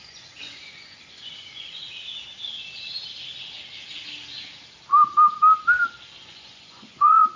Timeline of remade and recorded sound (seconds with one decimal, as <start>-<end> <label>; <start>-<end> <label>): 0.0-1.8 remade; 1.8-6.2 recorded; 6.2-7.4 remade

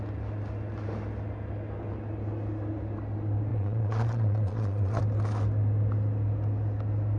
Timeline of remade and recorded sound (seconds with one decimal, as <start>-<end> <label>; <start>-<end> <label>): 0.0-3.5 recorded; 3.5-5.0 remade; 5.0-7.2 recorded

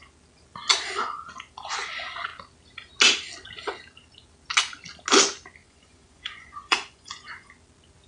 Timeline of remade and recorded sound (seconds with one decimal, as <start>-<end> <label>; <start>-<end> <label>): 0.0-5.6 recorded; 5.6-7.5 remade; 7.5-8.1 recorded

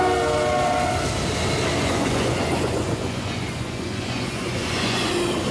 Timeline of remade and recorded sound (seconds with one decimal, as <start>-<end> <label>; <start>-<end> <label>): 0.0-1.8 recorded; 1.8-5.1 remade; 5.1-5.5 recorded